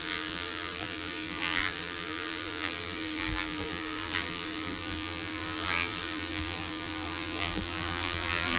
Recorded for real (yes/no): no